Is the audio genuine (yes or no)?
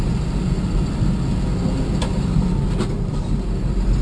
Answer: yes